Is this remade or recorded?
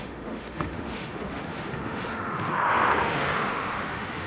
remade